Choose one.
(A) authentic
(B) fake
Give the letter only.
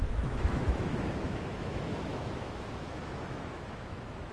B